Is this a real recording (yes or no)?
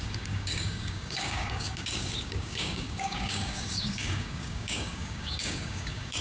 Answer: no